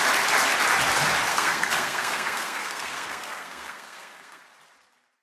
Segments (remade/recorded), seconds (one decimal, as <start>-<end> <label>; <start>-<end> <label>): 0.0-1.3 recorded; 1.3-4.4 remade; 4.4-5.2 recorded